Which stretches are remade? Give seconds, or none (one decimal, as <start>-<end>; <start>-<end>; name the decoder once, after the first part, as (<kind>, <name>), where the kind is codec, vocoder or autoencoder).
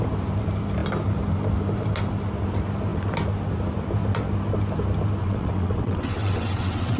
5.2-7.0 (vocoder, WaveNeXt)